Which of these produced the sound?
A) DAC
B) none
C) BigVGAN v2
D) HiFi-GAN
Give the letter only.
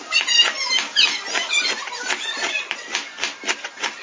B